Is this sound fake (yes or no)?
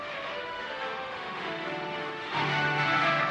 yes